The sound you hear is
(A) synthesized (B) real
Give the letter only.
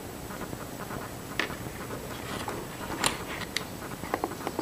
B